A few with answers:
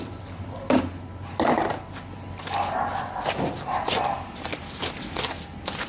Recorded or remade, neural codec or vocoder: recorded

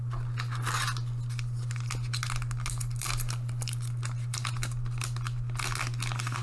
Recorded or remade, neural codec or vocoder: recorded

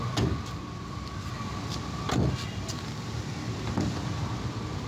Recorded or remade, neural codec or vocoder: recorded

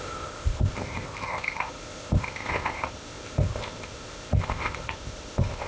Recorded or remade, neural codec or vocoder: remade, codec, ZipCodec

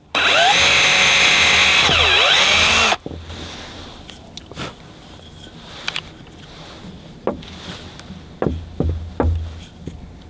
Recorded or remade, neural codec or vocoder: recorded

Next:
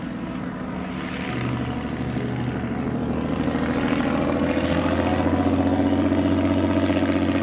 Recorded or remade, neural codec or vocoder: recorded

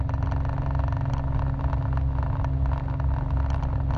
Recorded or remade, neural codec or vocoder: recorded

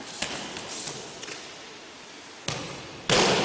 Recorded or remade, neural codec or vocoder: recorded